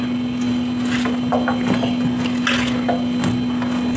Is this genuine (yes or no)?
yes